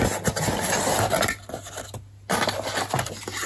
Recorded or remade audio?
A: recorded